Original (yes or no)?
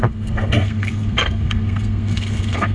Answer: no